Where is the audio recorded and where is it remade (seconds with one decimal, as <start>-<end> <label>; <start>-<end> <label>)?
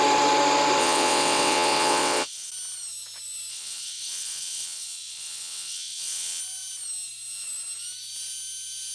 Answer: 0.0-0.8 recorded; 0.8-2.5 remade; 2.5-3.5 recorded; 3.5-6.4 remade; 6.4-8.9 recorded